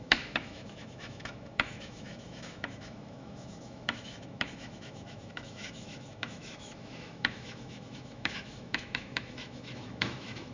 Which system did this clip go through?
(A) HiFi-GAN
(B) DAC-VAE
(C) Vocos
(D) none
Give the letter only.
B